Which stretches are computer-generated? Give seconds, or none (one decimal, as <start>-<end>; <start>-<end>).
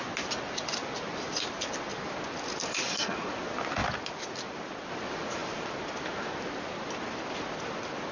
none